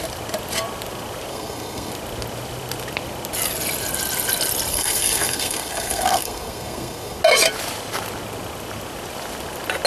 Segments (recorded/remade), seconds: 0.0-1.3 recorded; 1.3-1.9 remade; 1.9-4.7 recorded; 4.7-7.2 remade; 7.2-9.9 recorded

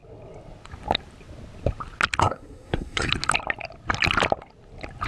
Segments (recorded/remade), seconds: 0.0-2.2 recorded; 2.2-3.1 remade; 3.1-5.1 recorded